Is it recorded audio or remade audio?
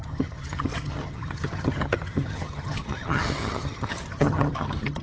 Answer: remade